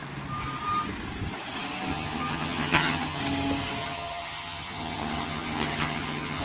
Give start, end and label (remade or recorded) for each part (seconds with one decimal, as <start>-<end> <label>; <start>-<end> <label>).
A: 0.0-1.9 recorded; 1.9-3.2 remade; 3.2-3.8 recorded; 3.8-6.4 remade